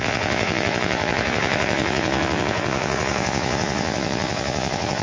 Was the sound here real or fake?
fake